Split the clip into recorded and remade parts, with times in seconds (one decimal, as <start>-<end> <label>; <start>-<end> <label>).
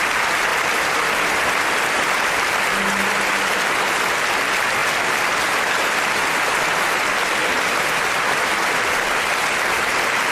0.0-0.5 recorded; 0.5-2.6 remade; 2.6-7.4 recorded; 7.4-8.0 remade; 8.0-10.3 recorded